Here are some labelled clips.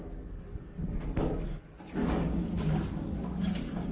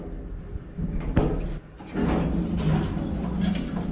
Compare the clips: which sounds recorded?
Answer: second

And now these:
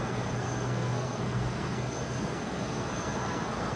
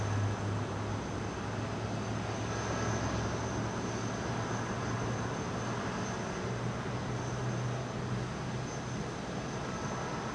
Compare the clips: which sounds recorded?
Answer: second